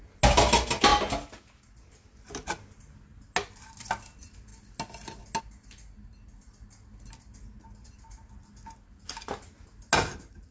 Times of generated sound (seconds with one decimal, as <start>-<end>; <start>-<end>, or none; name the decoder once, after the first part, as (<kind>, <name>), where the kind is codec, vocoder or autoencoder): none